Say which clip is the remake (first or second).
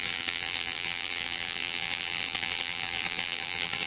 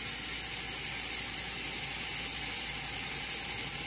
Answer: first